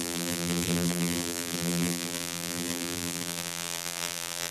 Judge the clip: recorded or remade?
remade